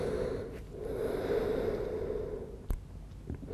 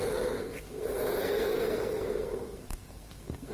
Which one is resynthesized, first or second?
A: second